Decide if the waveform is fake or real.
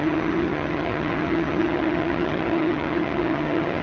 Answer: fake